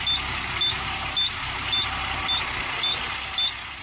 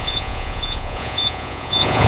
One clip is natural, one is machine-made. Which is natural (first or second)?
first